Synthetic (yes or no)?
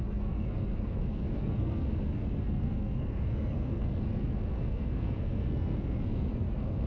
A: yes